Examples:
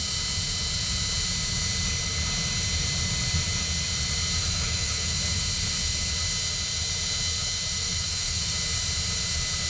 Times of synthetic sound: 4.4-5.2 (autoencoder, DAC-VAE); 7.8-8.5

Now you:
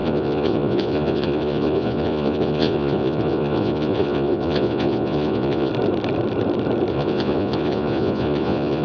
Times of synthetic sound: 0.0-5.7 (vocoder, Vocos); 6.9-8.8

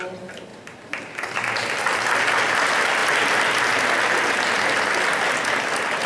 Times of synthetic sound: none

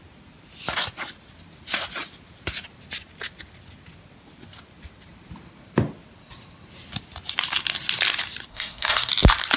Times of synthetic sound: 8.5-9.1 (codec, SNAC)

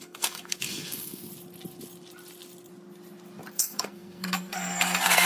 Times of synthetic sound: 0.0-1.3 (codec, SNAC); 3.5-5.3

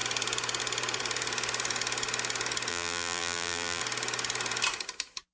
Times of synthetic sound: 2.7-3.8 (vocoder, BigVGAN v2)

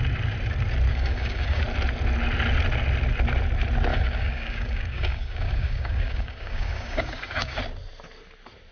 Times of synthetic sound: 0.9-1.6 (codec, DAC); 3.9-7.6

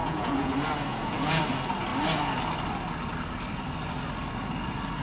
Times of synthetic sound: 0.0-0.5 (vocoder, Vocos); 0.9-1.4